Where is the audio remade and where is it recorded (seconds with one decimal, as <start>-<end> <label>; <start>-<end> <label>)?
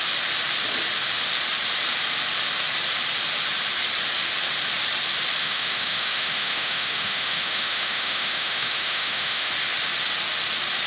0.0-5.4 recorded; 5.4-9.5 remade; 9.5-10.9 recorded